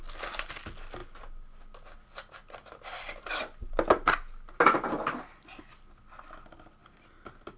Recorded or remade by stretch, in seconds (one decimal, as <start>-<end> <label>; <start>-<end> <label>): 0.0-7.6 recorded